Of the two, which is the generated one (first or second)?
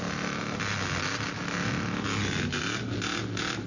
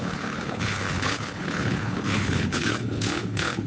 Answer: second